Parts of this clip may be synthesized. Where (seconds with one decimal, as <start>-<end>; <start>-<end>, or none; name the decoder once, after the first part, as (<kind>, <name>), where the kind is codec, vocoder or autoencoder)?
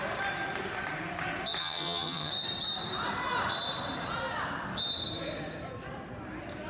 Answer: 1.6-2.3 (vocoder, HiFi-GAN)